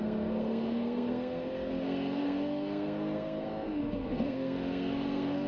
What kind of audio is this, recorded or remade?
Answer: remade